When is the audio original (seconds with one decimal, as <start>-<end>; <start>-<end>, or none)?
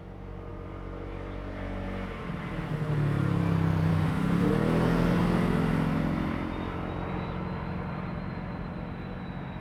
0.0-3.9; 4.5-9.6